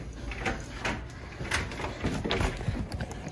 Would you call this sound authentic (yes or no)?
yes